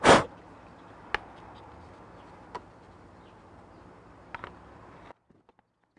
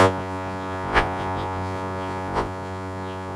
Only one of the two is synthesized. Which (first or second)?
second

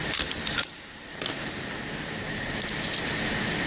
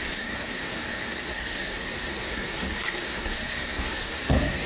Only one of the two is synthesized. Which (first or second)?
second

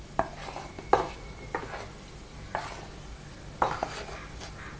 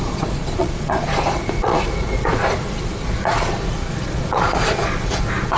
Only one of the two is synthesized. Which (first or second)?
second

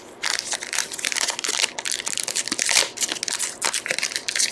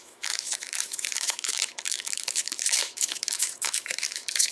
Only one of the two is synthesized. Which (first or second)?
second